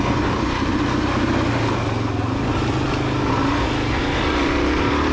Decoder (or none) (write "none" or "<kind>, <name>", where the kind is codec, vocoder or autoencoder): none